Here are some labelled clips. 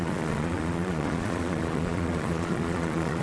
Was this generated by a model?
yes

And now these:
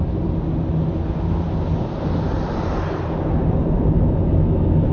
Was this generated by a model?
no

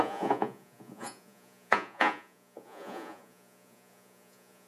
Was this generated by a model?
yes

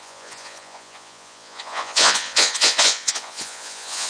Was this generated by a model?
yes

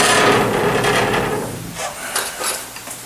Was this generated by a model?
no